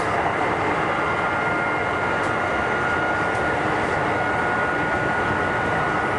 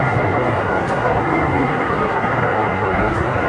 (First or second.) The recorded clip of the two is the first